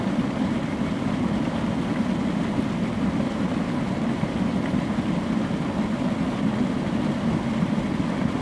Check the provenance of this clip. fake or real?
real